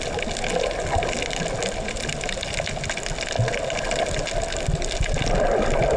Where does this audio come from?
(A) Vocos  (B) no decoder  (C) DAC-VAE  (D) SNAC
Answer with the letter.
B